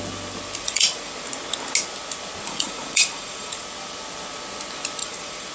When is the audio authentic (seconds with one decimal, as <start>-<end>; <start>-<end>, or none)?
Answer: 0.0-0.6; 1.1-2.4; 3.6-5.0